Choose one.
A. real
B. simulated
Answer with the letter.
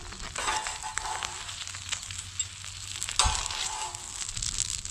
A